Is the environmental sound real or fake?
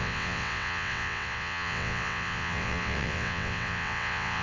fake